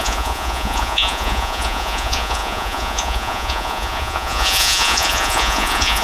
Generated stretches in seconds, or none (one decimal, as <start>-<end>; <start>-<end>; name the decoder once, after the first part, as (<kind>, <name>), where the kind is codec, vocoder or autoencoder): 0.0-6.0 (vocoder, Vocos)